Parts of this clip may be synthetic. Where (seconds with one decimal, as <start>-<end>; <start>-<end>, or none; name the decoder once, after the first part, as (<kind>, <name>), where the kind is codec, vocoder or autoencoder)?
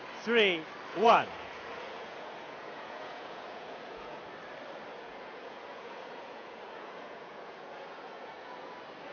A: 0.9-4.2 (vocoder, Vocos); 4.9-8.7